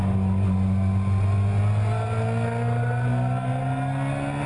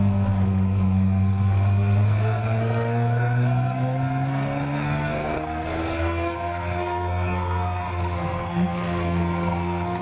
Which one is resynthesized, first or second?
second